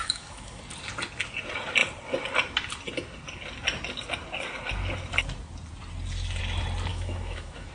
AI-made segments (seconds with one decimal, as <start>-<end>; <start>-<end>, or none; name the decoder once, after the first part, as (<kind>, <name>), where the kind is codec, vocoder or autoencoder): 0.0-0.6 (autoencoder, DAC-VAE); 6.9-7.7